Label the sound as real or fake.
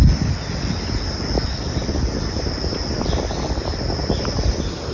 real